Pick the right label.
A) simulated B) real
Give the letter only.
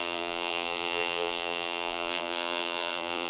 A